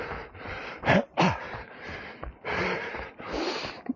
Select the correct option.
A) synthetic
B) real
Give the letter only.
B